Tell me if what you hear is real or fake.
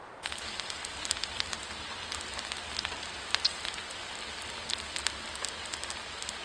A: real